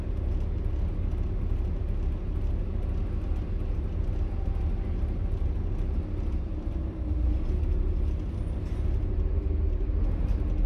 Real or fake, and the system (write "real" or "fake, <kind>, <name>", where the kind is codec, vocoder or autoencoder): real